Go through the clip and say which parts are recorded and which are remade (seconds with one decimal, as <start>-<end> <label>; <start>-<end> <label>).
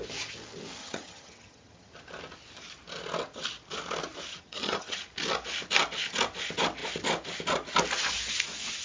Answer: 0.0-0.8 recorded; 0.8-1.9 remade; 1.9-4.3 recorded; 4.3-5.0 remade; 5.0-8.8 recorded